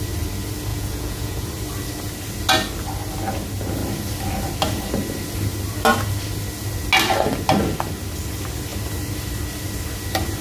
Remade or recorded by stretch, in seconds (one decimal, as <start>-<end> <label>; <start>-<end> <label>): 0.0-0.7 recorded; 0.7-1.5 remade; 1.5-10.4 recorded